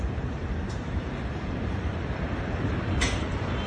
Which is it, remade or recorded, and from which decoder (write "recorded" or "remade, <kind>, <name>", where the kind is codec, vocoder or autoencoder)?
remade, vocoder, BigVGAN v2